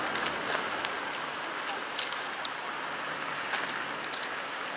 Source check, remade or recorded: recorded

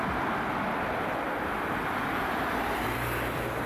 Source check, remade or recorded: remade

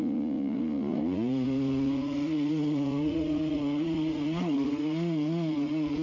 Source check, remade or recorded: remade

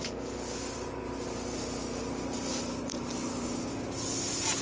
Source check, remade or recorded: recorded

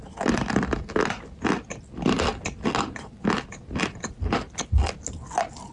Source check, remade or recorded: recorded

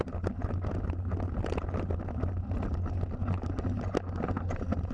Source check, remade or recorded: recorded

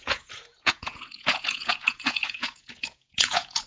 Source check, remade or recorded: remade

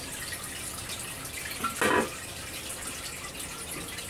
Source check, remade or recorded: recorded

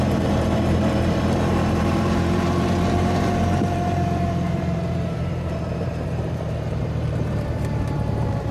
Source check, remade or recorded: remade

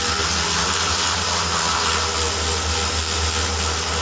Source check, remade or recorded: recorded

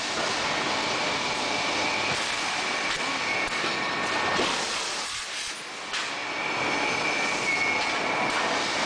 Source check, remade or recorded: recorded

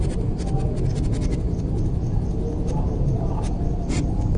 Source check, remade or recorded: recorded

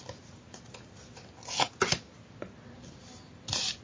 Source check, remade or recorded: recorded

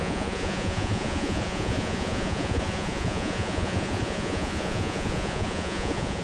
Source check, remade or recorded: remade